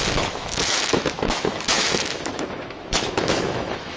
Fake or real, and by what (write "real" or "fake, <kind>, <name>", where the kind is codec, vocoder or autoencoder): fake, autoencoder, DAC-VAE